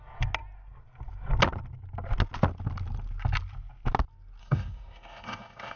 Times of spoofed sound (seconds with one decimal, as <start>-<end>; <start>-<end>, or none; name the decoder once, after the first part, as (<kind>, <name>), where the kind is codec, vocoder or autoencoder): 4.4-5.8 (codec, SNAC)